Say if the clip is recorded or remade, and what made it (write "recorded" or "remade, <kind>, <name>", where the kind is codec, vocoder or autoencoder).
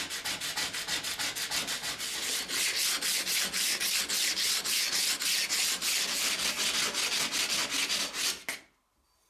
recorded